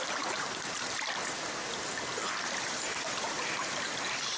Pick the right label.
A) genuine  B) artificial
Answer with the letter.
A